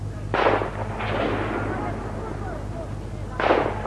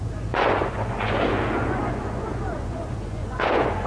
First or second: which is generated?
second